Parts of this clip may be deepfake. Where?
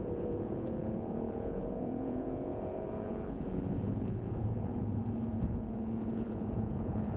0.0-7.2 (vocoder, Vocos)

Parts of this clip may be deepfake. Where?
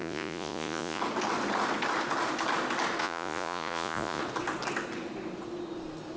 0.0-1.0 (vocoder, Vocos); 3.0-4.2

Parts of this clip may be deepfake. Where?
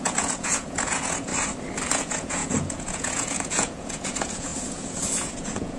0.0-1.3 (vocoder, Vocos); 1.9-5.8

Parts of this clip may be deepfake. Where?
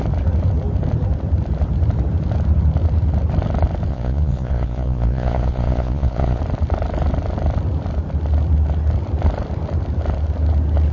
3.9-6.4 (vocoder, Vocos)